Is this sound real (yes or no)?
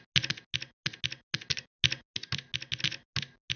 yes